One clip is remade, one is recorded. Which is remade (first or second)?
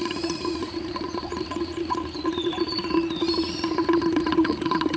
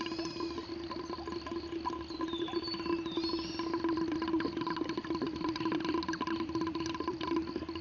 first